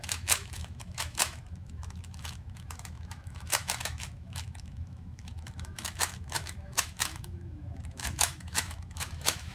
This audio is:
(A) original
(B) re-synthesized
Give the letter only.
B